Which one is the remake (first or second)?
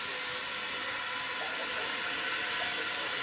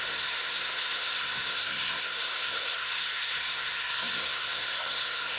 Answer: second